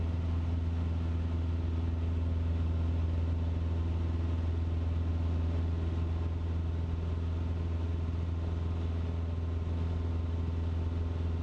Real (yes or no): yes